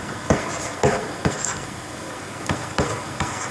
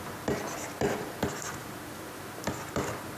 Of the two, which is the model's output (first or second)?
first